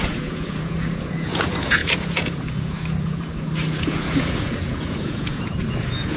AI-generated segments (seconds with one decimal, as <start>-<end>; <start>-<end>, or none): 0.0-6.2

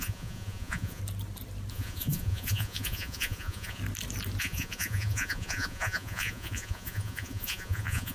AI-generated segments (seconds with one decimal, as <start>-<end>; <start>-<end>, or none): 0.0-1.0; 1.7-3.8; 4.4-8.1

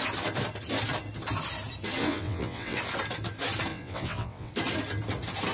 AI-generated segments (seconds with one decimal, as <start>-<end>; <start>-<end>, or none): 2.0-2.8; 3.7-4.5

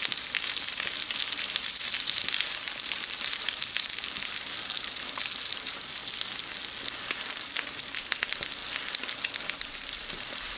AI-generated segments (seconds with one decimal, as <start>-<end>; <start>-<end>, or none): 0.0-6.0; 7.4-8.6; 9.4-10.6

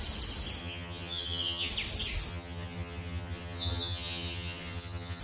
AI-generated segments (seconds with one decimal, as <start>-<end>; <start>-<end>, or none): 0.6-1.7; 2.3-5.2

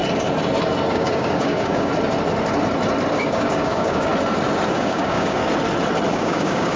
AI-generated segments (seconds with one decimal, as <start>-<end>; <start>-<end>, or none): 0.9-1.9; 3.2-4.1; 4.7-5.4; 6.1-6.8

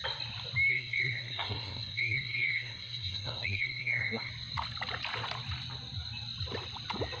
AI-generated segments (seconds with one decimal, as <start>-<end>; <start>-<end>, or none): 0.7-4.3